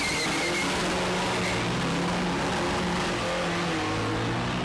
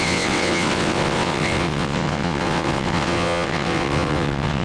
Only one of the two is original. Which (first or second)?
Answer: first